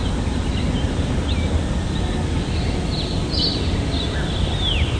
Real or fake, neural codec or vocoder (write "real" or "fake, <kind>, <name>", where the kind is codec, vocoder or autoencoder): real